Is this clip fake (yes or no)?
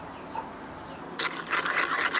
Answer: no